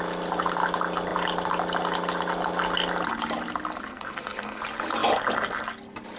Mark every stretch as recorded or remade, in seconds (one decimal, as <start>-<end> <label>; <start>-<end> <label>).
0.0-3.9 recorded; 3.9-4.6 remade; 4.6-6.2 recorded